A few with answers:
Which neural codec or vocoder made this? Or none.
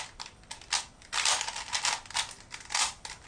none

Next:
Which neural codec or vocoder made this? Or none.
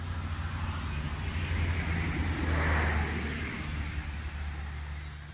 none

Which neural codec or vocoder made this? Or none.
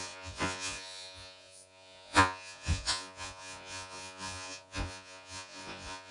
vocoder, Vocos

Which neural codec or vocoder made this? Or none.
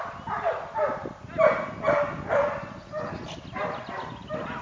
none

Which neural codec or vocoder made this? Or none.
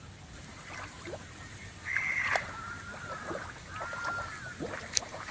none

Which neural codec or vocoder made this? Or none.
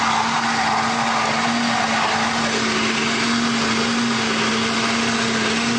none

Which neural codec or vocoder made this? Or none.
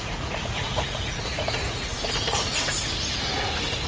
vocoder, Vocos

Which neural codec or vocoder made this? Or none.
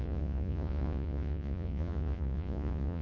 vocoder, Vocos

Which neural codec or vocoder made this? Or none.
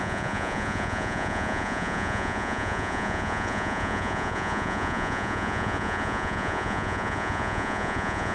vocoder, Vocos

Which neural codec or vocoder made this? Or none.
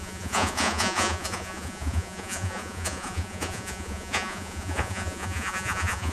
vocoder, Vocos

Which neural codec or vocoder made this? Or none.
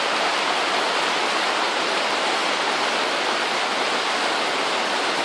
none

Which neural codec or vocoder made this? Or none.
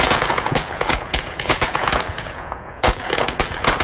vocoder, Vocos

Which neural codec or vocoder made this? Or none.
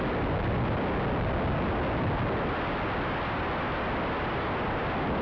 none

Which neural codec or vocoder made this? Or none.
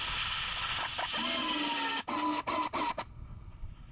none